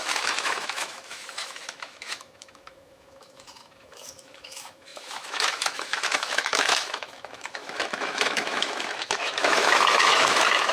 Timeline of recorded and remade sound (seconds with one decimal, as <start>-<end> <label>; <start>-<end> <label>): 0.0-10.7 remade